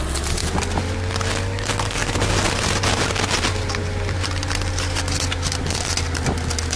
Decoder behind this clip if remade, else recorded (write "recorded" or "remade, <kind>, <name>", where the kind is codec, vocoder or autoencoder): recorded